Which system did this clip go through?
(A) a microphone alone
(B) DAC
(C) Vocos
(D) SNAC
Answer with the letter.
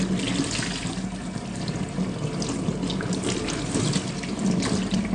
A